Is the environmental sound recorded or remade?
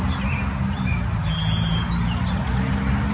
recorded